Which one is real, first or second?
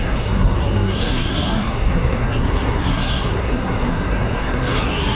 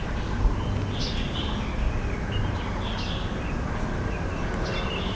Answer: second